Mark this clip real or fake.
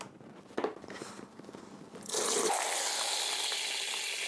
real